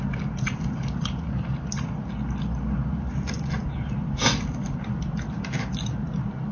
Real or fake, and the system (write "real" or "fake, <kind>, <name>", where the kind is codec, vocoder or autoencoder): real